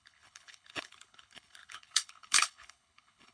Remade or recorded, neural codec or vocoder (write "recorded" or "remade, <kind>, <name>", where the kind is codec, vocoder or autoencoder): remade, codec, HILCodec